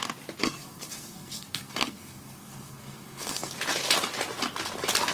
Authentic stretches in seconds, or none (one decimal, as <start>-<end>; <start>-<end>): 0.0-0.4; 3.5-5.1